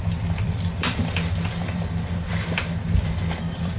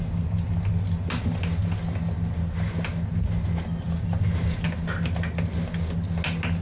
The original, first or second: second